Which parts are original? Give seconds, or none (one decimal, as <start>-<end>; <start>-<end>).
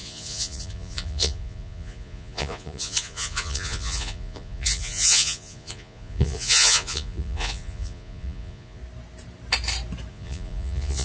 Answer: 8.8-10.1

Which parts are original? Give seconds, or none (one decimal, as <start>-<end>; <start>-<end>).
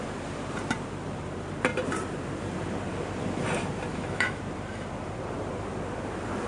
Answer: 0.0-3.9; 4.4-6.5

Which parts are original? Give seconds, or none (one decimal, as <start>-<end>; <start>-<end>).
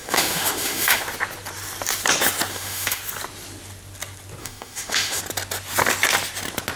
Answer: 1.0-2.5; 3.0-4.4; 5.2-6.8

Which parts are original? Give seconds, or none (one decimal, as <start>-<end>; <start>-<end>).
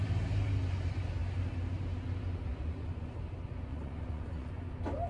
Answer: 0.0-2.5; 3.1-3.7; 4.5-5.1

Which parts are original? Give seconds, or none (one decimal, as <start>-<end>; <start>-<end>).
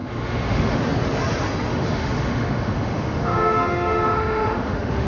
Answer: 0.8-1.7